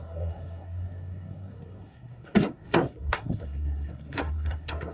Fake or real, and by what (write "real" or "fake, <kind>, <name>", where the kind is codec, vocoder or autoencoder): fake, codec, SNAC